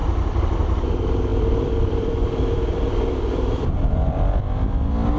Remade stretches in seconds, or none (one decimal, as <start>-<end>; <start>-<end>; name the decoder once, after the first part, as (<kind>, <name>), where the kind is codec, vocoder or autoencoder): 0.0-0.9 (vocoder, BigVGAN v2); 1.3-4.4